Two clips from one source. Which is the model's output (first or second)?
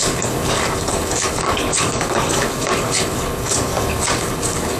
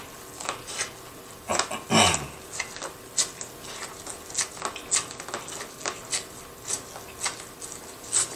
first